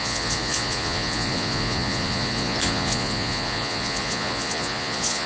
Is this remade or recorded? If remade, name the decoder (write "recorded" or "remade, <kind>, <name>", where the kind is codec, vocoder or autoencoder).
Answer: remade, vocoder, Vocos